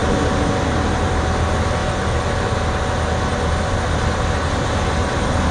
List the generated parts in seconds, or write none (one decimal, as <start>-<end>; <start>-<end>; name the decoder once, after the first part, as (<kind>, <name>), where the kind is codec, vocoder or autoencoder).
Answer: none